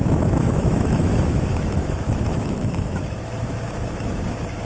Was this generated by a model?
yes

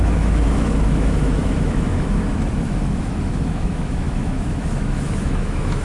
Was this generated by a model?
yes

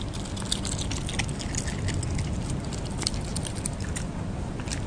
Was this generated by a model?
no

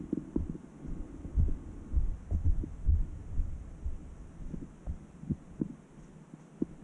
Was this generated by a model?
no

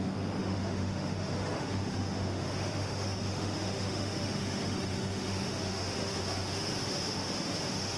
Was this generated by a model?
yes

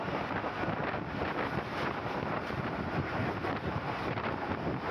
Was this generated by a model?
no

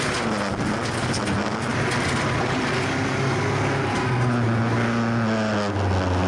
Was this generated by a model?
no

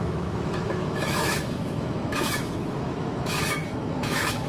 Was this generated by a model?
yes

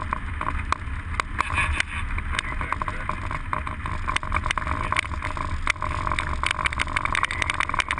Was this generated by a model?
no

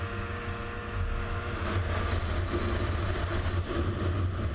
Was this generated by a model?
no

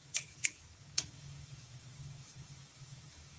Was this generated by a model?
yes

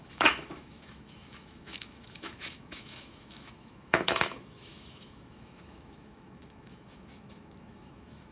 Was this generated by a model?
yes